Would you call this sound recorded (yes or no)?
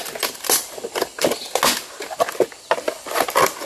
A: yes